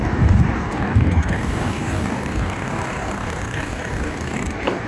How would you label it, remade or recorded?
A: remade